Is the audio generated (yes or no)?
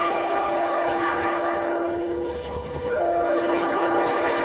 yes